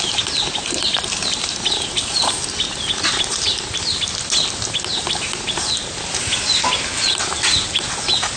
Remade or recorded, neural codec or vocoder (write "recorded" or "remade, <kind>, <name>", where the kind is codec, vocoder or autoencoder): recorded